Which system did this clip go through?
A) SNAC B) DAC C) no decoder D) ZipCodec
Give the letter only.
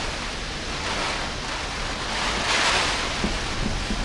C